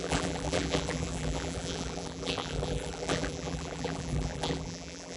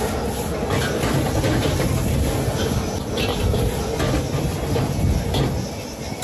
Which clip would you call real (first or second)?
second